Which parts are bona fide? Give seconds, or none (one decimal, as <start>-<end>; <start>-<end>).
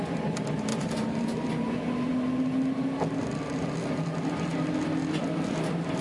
0.0-0.7; 1.7-6.0